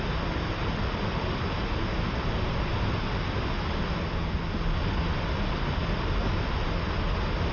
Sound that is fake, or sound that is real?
real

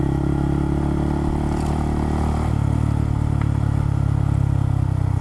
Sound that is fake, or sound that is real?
real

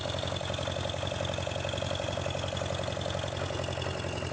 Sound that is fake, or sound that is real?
real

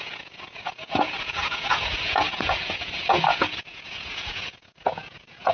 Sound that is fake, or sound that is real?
fake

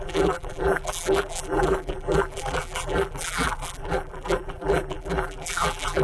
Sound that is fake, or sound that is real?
fake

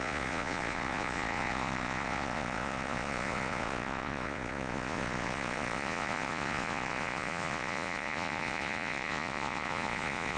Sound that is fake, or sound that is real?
fake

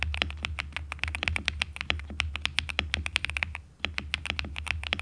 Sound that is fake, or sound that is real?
real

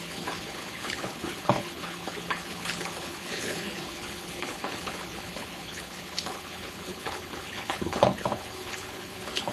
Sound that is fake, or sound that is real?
fake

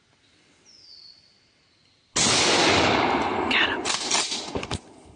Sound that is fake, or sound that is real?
real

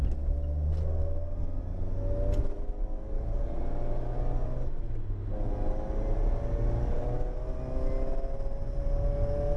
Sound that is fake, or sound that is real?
real